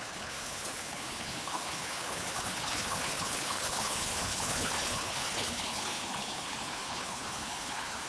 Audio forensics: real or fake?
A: fake